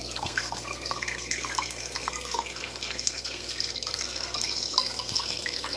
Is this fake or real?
fake